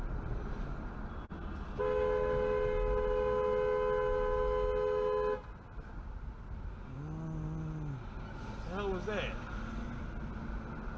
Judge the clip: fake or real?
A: real